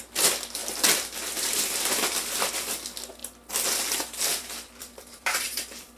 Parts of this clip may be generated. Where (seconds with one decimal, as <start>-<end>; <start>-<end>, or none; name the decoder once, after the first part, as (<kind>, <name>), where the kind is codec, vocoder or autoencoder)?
0.6-2.5 (vocoder, BigVGAN v2); 4.3-6.0